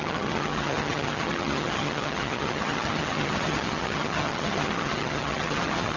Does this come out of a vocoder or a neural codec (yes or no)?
yes